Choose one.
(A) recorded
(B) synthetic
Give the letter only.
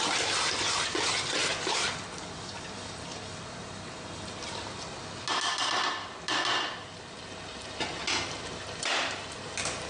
A